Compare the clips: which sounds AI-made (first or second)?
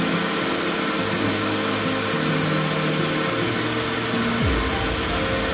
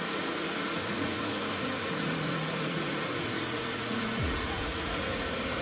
second